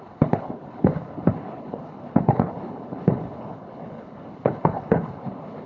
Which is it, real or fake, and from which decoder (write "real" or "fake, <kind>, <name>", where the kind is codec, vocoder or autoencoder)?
fake, codec, HILCodec